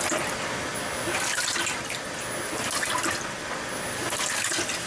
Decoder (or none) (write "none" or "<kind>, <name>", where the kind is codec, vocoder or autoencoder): none